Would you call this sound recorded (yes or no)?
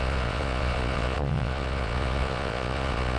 no